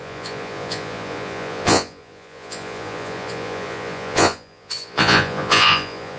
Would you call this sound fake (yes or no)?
yes